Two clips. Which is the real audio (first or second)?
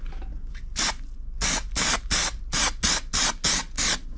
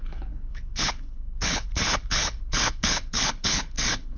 first